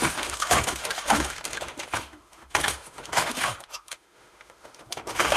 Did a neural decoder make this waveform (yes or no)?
yes